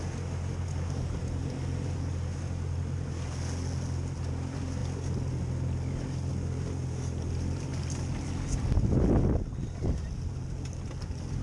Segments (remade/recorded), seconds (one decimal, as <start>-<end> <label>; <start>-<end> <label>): 0.0-11.4 recorded